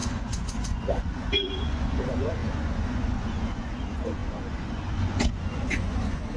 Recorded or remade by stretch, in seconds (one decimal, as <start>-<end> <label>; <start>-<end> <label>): 0.0-6.4 remade